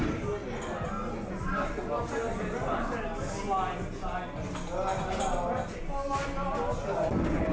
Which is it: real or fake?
real